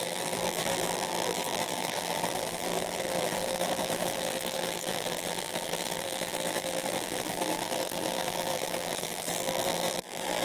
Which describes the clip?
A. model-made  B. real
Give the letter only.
A